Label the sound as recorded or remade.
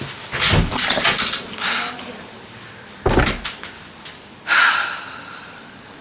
recorded